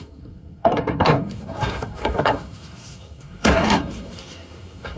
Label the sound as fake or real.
fake